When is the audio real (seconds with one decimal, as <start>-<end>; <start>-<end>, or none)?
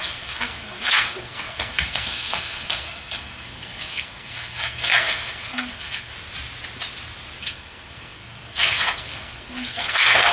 6.1-7.4